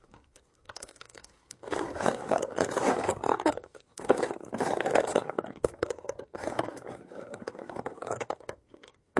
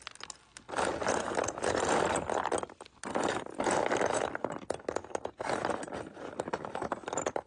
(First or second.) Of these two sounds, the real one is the second